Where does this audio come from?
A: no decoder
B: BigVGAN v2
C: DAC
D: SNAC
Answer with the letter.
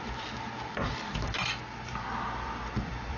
B